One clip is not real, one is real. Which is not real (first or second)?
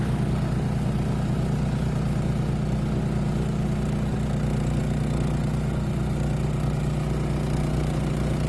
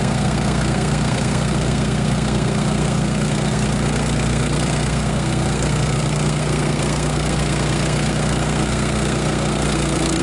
second